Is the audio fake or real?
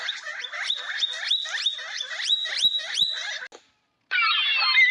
real